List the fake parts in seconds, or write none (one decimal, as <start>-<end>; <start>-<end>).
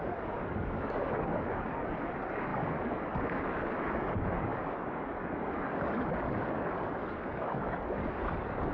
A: 0.0-8.7